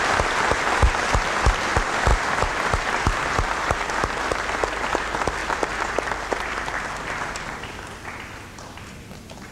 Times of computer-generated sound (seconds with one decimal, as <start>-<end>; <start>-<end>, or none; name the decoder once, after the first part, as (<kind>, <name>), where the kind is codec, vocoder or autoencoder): 2.1-4.2 (vocoder, BigVGAN v2); 5.4-8.8

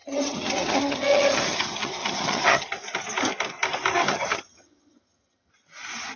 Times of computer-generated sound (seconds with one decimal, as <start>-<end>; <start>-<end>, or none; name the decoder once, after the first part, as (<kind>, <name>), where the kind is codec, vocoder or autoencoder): 0.0-2.7 (vocoder, HiFi-GAN); 4.1-5.5